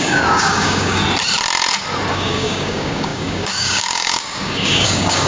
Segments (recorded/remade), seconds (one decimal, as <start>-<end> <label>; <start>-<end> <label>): 0.0-1.0 remade; 1.0-2.1 recorded; 2.1-5.3 remade